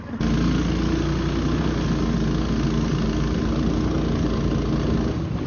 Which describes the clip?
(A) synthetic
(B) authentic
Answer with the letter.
B